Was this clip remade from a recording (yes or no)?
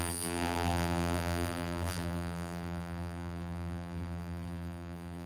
yes